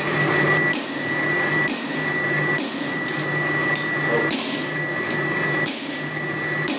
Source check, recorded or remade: recorded